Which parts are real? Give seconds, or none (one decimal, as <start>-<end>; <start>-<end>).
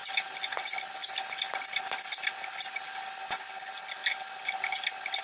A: 0.0-5.2